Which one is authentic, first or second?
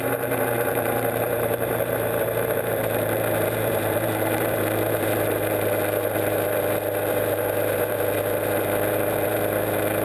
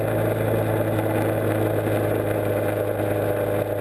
second